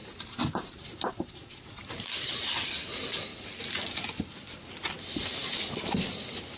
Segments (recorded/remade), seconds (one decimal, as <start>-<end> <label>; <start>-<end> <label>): 0.0-2.5 remade; 2.5-6.6 recorded